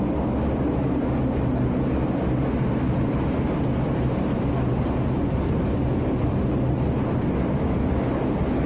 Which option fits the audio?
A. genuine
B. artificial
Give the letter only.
A